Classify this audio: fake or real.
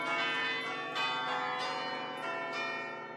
real